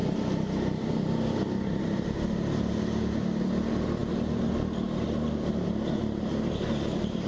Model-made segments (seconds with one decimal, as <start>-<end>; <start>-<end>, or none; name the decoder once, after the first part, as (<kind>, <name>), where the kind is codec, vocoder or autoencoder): none